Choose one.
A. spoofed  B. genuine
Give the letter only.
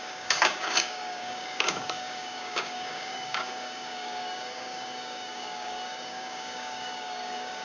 A